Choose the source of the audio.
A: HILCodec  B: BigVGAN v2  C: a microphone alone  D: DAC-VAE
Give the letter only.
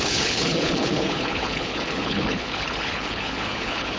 A